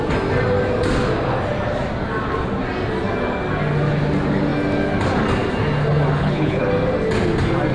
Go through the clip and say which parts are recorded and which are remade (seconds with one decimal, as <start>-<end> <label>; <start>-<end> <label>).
0.0-6.2 recorded; 6.2-6.7 remade; 6.7-7.7 recorded